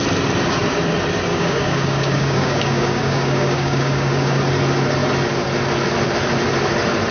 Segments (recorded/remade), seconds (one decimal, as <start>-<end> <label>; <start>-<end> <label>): 0.0-1.3 recorded; 1.3-4.4 remade; 4.4-7.1 recorded